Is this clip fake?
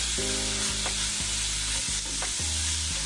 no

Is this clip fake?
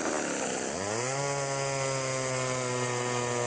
no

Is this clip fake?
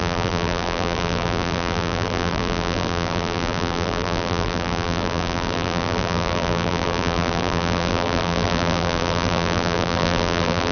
yes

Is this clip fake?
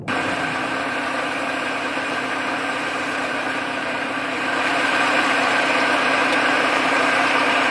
yes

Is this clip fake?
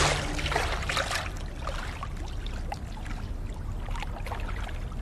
no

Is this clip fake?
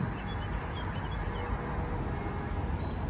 no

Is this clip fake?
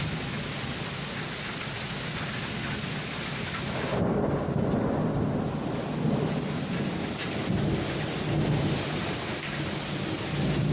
no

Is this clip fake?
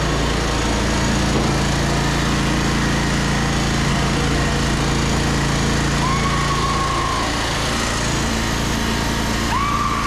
no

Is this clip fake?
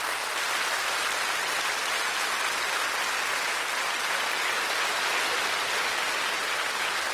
no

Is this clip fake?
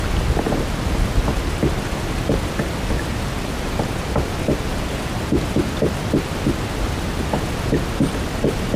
no